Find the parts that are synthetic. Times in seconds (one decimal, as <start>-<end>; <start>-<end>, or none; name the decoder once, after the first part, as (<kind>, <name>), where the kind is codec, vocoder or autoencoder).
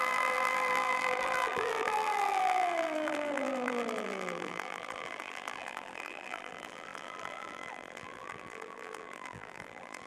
0.0-10.1 (vocoder, BigVGAN v2)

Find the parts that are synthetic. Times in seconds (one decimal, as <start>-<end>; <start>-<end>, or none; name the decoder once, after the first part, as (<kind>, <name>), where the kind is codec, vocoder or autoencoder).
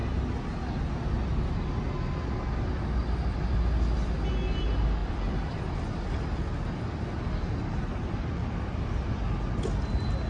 5.0-5.6 (vocoder, BigVGAN v2); 8.4-9.3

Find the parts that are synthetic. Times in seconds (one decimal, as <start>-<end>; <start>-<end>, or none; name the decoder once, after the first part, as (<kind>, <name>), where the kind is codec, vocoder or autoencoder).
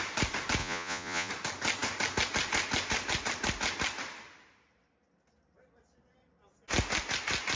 0.6-1.3 (vocoder, Vocos)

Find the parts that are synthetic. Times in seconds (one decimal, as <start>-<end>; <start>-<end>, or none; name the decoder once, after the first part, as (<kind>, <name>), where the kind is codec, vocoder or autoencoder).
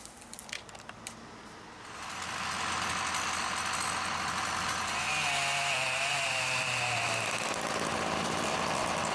6.1-7.2 (vocoder, BigVGAN v2)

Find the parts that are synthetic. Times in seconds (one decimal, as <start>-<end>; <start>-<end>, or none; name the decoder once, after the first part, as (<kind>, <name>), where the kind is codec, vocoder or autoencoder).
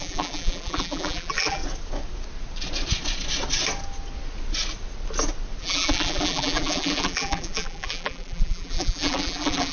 0.0-1.6 (vocoder, BigVGAN v2); 5.6-9.7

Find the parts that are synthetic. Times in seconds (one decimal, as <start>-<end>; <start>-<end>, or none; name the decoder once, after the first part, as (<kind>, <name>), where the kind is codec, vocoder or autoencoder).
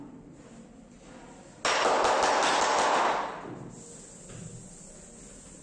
none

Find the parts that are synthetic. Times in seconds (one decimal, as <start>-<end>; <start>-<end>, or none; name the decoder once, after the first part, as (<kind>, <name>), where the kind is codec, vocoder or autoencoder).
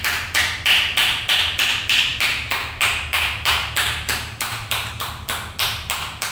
2.1-5.1 (vocoder, BigVGAN v2)